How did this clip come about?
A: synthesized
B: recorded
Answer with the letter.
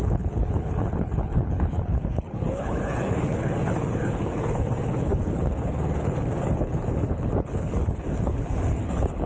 A